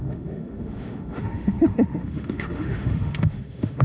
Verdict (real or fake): fake